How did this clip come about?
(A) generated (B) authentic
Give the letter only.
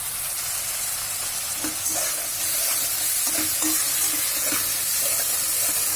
B